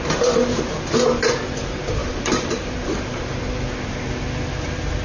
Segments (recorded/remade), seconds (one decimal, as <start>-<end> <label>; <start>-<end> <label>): 0.0-2.0 recorded; 2.0-3.4 remade; 3.4-5.0 recorded

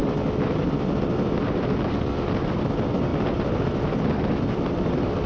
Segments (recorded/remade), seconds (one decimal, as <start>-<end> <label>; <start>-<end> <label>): 0.0-1.6 remade; 1.6-3.1 recorded; 3.1-5.3 remade

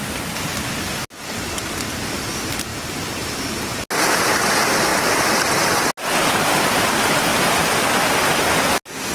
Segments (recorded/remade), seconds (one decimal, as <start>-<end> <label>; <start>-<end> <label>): 0.0-7.3 recorded; 7.3-7.8 remade; 7.8-9.1 recorded